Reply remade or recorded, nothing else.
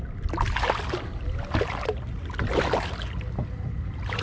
recorded